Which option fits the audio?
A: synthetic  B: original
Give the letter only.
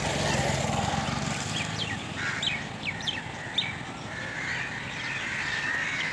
B